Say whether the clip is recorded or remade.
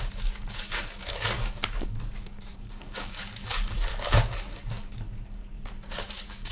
remade